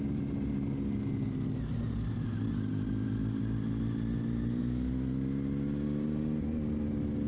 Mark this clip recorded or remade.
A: recorded